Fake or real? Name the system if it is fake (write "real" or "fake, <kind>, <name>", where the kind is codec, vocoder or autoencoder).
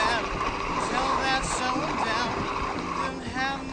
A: real